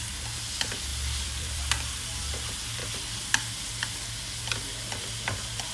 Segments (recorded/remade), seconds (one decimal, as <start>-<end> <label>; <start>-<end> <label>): 0.0-0.9 recorded; 0.9-2.3 remade; 2.3-5.7 recorded